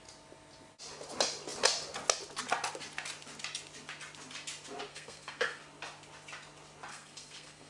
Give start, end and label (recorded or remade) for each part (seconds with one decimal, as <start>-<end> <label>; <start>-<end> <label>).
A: 0.0-4.9 recorded; 4.9-5.6 remade; 5.6-6.9 recorded; 6.9-7.7 remade